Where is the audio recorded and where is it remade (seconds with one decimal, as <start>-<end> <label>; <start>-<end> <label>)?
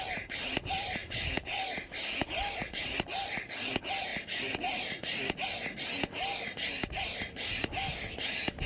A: 0.0-8.7 recorded